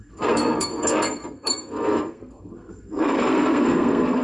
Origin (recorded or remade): remade